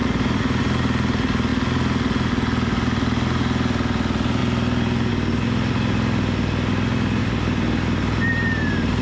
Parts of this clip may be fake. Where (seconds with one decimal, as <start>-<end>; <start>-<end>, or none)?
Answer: 7.2-9.0